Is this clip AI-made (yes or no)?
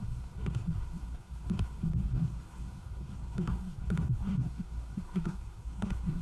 yes